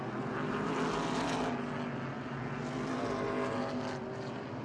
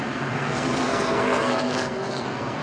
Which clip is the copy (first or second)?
second